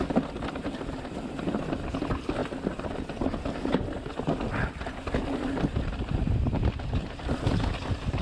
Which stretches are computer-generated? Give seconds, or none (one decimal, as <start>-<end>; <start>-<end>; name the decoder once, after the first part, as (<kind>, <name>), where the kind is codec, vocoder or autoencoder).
none